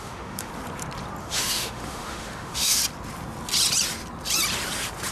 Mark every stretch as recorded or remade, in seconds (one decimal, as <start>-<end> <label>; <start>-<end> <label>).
0.0-0.5 remade; 0.5-1.2 recorded; 1.2-2.8 remade; 2.8-5.1 recorded

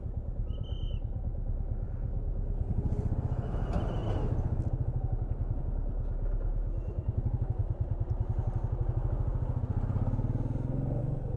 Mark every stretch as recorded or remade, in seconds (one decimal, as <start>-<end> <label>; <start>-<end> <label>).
0.0-11.4 recorded

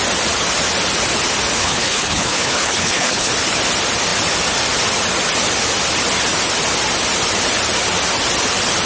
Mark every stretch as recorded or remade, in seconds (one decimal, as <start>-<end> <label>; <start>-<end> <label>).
0.0-1.6 recorded; 1.6-3.3 remade; 3.3-8.9 recorded

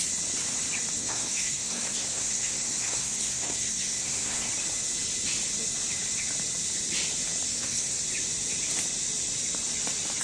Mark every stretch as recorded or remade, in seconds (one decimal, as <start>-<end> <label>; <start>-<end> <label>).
0.0-1.0 recorded; 1.0-4.5 remade; 4.5-7.5 recorded; 7.5-8.0 remade; 8.0-10.2 recorded

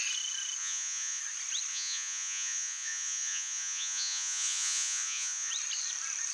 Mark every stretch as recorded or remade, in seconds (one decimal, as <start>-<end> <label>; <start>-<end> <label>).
0.0-0.6 recorded; 0.6-1.2 remade; 1.2-1.7 recorded; 1.7-5.5 remade; 5.5-6.3 recorded

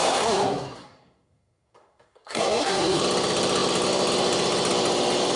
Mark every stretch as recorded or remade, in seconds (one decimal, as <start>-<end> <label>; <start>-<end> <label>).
0.0-3.0 remade; 3.0-5.4 recorded